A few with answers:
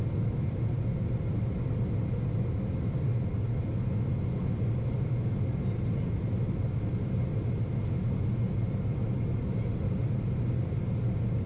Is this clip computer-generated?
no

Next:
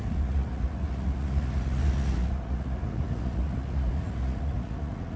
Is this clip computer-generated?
yes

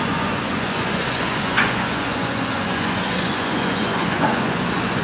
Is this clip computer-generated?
yes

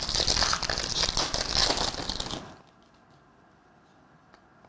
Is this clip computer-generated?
no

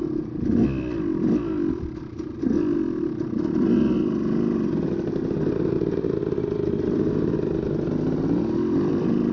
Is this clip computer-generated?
no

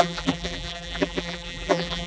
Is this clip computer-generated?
yes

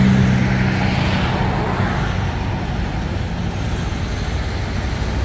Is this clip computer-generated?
no